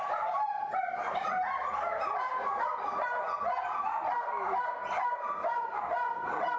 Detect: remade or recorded recorded